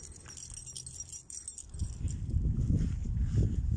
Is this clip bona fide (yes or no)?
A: yes